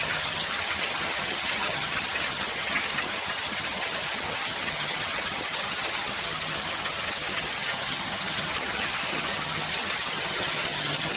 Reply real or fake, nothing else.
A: fake